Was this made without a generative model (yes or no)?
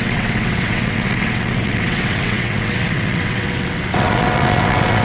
no